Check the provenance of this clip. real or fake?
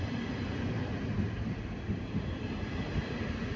real